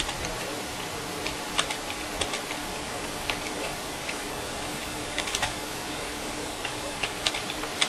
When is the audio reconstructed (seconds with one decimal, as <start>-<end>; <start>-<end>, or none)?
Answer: 2.6-7.3